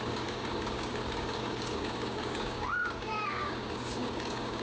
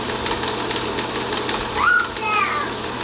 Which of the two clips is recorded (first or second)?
second